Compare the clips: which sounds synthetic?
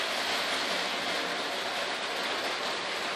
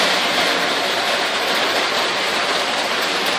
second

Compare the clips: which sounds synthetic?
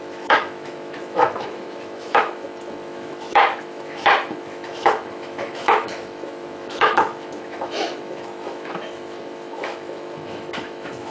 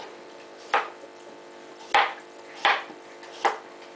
first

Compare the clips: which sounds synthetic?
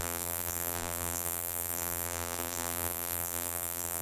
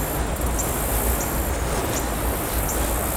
first